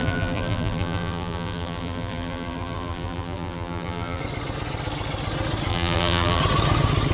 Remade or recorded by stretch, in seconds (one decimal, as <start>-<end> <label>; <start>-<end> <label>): 0.0-4.2 remade; 4.2-5.7 recorded; 5.7-6.4 remade; 6.4-7.1 recorded